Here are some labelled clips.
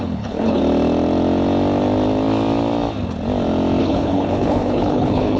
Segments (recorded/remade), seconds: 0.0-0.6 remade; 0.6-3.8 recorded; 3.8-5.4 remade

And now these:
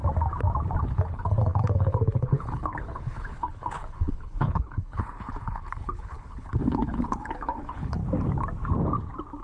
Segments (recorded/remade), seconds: 0.0-0.8 recorded; 0.8-8.0 remade; 8.0-9.4 recorded